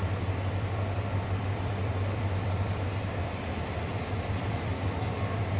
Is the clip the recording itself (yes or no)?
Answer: no